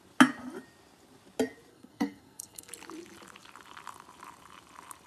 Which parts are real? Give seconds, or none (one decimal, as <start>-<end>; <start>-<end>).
0.0-1.7; 2.7-5.1